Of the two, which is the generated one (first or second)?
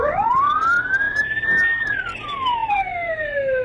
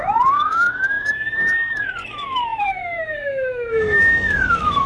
second